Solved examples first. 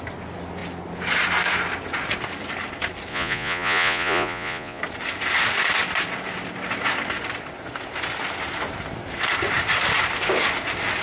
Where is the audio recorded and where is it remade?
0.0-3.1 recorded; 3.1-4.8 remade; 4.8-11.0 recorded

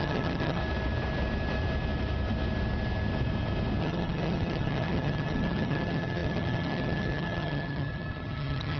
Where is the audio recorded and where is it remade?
0.0-0.6 remade; 0.6-3.8 recorded; 3.8-8.8 remade